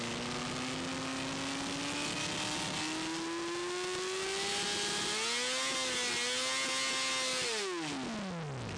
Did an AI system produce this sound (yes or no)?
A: no